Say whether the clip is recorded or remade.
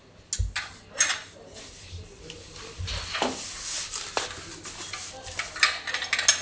recorded